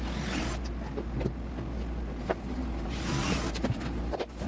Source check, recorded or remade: recorded